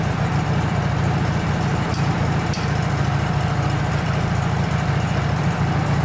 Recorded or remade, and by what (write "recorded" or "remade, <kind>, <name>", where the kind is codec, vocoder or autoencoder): recorded